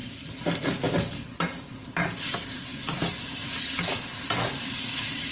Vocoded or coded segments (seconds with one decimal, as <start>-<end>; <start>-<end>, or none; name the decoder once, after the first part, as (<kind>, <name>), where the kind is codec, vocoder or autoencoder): none